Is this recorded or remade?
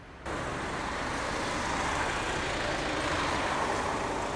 recorded